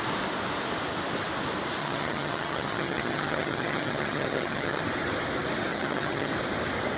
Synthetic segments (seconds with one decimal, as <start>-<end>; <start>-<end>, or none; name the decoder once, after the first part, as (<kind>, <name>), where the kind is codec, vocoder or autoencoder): 1.8-4.8 (vocoder, HiFi-GAN); 5.7-6.3